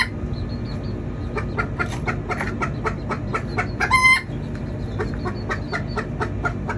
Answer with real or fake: real